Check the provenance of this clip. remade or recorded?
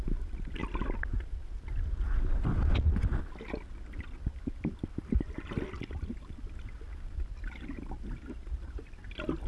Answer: recorded